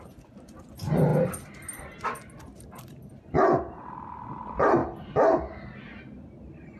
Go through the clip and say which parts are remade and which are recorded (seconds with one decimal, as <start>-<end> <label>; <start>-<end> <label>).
0.0-6.8 recorded